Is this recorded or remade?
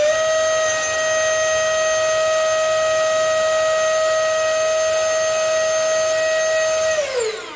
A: recorded